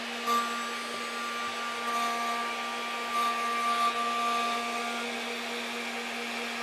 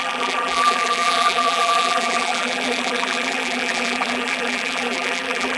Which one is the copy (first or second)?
second